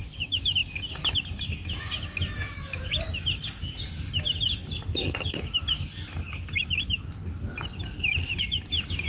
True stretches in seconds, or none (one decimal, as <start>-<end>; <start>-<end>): 0.0-9.1